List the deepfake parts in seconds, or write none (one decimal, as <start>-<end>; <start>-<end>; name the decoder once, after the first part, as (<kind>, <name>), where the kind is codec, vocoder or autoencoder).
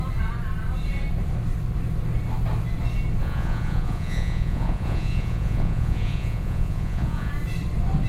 3.2-7.3 (vocoder, Vocos)